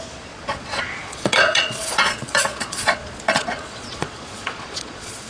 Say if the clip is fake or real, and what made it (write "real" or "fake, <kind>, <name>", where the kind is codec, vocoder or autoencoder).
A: fake, vocoder, Vocos